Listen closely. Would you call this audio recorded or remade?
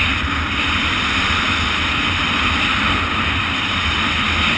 remade